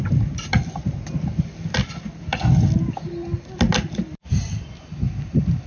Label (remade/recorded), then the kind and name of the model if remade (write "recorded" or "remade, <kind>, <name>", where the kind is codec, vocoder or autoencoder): recorded